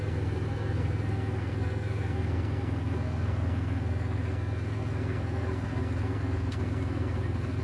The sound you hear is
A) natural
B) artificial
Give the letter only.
B